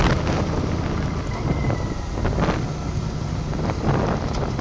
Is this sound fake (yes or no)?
no